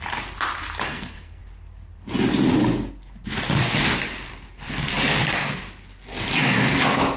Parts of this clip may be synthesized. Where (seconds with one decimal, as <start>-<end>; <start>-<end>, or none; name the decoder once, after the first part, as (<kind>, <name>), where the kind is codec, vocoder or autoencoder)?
0.9-1.4 (codec, SNAC)